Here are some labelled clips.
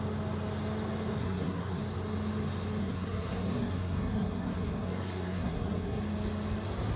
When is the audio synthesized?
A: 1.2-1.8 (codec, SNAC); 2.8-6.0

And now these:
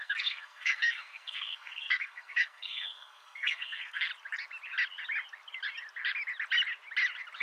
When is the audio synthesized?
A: 0.0-4.1 (codec, SNAC)

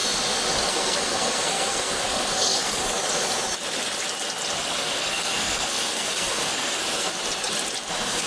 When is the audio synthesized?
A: 0.7-2.8 (codec, SNAC); 4.6-7.1; 7.9-8.3

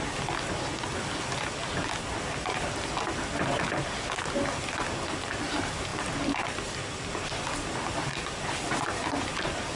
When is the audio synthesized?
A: none

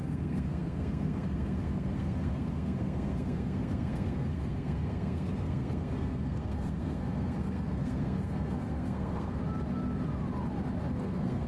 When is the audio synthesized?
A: 0.0-9.4 (codec, SNAC); 11.0-11.5

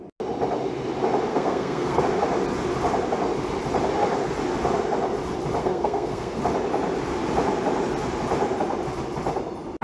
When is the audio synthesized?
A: 1.3-2.0 (codec, SNAC); 5.6-6.4

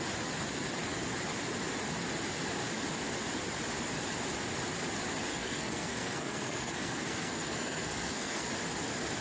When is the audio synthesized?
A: 5.3-8.5 (codec, SNAC)